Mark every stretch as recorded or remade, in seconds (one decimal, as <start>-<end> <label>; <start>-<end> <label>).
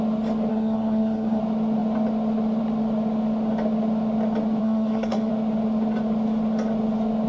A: 0.0-0.5 recorded; 0.5-1.4 remade; 1.4-4.6 recorded; 4.6-5.3 remade; 5.3-7.3 recorded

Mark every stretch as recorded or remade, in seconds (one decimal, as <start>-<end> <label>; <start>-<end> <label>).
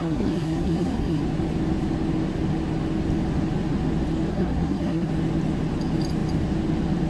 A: 0.0-1.2 remade; 1.2-4.3 recorded; 4.3-5.1 remade; 5.1-7.1 recorded